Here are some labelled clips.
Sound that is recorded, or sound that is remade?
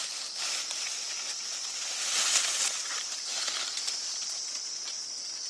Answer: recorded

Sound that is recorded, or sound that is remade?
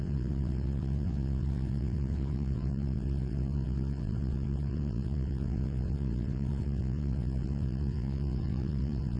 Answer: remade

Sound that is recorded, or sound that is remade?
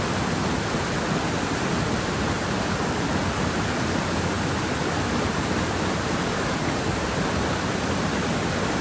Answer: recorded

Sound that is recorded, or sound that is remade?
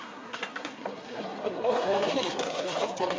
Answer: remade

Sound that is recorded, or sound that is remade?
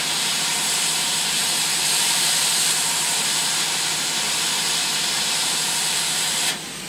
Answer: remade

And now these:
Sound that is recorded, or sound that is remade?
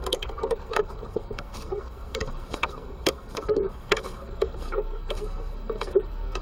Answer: remade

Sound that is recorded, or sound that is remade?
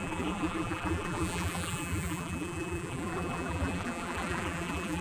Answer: remade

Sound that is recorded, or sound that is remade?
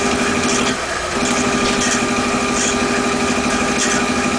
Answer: recorded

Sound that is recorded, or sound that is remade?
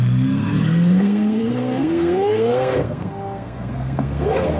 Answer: remade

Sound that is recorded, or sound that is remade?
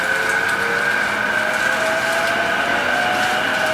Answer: recorded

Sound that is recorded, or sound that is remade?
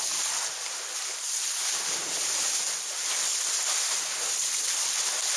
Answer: recorded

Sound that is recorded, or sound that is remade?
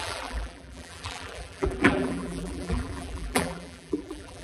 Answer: remade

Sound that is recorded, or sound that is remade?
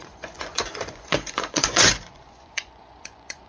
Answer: remade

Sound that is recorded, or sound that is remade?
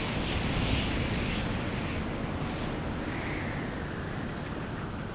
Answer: recorded